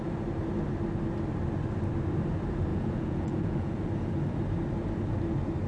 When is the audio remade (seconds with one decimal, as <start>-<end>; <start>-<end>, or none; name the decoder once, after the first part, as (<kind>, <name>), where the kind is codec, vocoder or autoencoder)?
2.7-3.9 (vocoder, Vocos)